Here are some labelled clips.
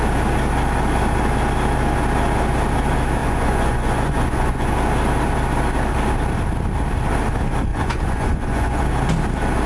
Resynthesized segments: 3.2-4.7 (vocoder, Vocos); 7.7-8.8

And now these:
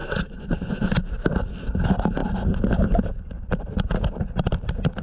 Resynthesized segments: 0.0-1.1 (vocoder, Vocos)

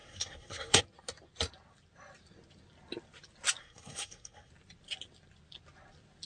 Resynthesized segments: 0.0-0.8 (codec, SNAC); 3.6-4.5

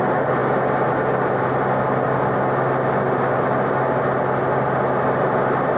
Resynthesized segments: none

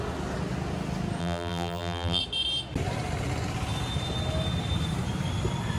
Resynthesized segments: 1.2-2.2 (vocoder, BigVGAN v2)

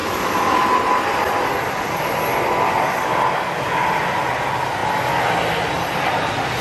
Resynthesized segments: none

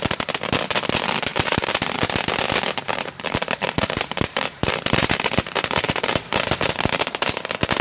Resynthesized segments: 1.3-1.8 (vocoder, BigVGAN v2); 2.8-7.8